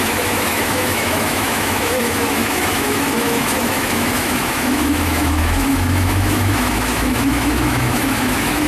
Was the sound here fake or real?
fake